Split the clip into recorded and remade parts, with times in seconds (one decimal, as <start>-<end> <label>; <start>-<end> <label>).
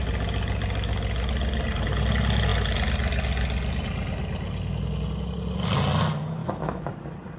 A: 0.0-6.4 recorded; 6.4-6.9 remade; 6.9-7.4 recorded